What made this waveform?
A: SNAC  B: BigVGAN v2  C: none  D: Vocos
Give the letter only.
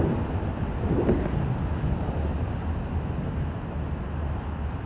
C